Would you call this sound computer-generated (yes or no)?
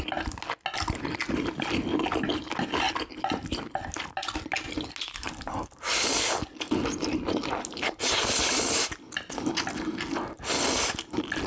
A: no